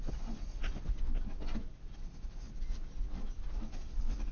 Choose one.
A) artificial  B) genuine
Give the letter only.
B